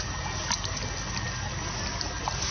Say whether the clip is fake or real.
real